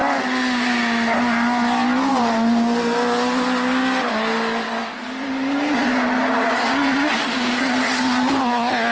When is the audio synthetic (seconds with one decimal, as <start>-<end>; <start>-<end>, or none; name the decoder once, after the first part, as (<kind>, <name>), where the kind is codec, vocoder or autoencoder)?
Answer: none